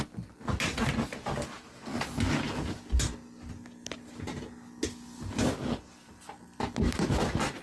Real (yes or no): yes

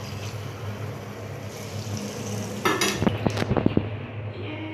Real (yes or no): yes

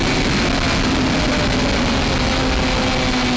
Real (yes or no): yes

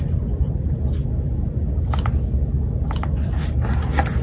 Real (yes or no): yes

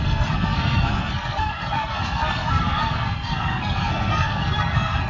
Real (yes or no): no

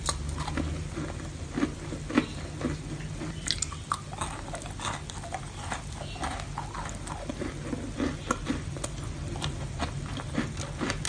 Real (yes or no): yes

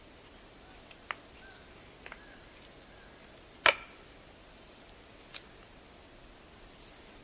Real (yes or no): yes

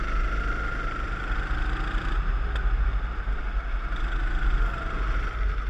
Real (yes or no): yes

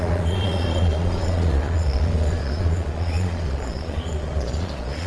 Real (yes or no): no